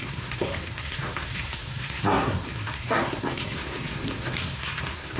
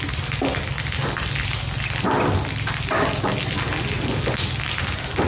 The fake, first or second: first